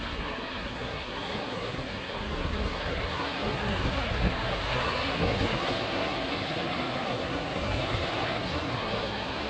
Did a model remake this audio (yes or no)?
yes